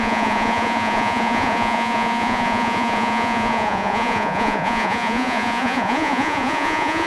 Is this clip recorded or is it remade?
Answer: remade